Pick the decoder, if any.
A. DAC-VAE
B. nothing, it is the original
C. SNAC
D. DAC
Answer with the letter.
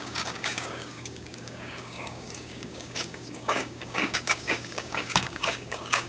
D